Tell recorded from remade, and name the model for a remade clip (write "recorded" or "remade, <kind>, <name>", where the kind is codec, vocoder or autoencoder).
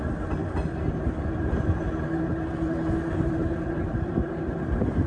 remade, vocoder, BigVGAN v2